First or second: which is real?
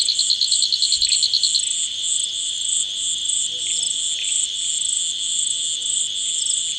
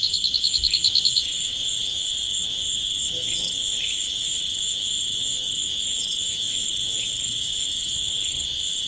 first